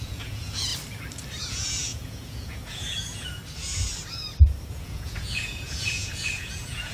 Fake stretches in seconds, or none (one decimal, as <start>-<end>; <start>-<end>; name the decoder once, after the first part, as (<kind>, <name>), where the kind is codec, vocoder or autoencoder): 0.0-0.7 (vocoder, Vocos); 1.4-3.4; 4.7-6.9